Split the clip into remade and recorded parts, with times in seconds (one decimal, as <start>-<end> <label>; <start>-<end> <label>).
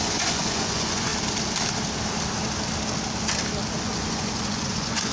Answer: 0.0-1.1 remade; 1.1-3.8 recorded; 3.8-5.1 remade